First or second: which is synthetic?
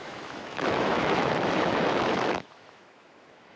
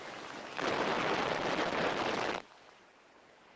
first